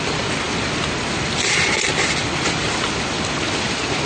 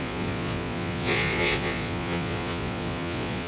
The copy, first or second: second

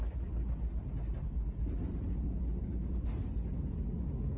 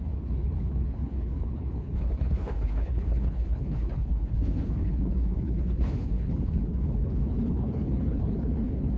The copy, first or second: second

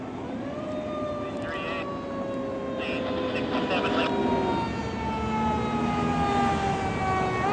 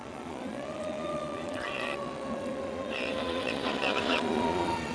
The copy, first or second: second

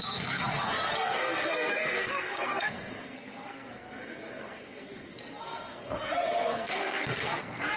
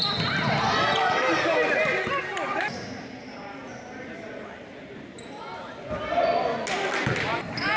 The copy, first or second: first